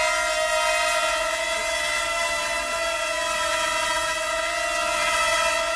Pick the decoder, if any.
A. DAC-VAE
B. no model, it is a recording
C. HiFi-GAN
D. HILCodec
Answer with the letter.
B